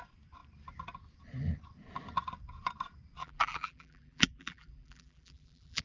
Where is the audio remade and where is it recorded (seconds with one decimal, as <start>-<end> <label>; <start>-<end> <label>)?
0.0-3.2 recorded; 3.2-5.8 remade